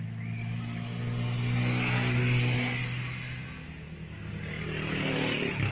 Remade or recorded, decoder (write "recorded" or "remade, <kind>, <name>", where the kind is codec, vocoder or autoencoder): recorded